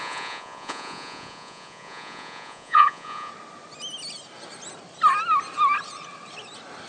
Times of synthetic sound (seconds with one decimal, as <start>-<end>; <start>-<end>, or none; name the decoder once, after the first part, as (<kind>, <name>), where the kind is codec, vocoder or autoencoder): 0.0-3.3 (vocoder, Vocos)